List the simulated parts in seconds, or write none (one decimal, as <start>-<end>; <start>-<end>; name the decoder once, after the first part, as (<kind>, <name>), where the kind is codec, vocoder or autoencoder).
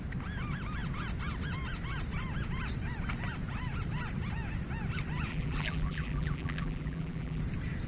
5.3-7.4 (vocoder, BigVGAN v2)